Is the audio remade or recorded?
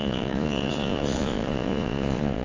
remade